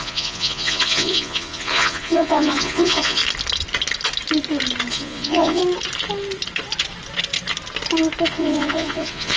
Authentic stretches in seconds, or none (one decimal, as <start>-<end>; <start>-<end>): 3.2-4.9; 5.6-8.3